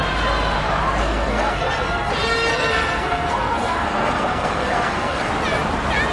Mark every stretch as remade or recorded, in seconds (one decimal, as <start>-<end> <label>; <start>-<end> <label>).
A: 0.0-1.0 recorded; 1.0-2.1 remade; 2.1-2.5 recorded; 2.5-5.3 remade; 5.3-6.1 recorded